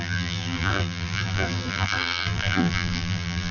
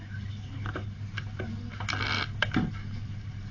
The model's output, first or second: first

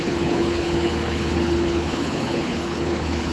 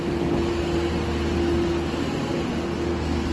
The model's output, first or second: first